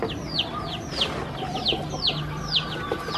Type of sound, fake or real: real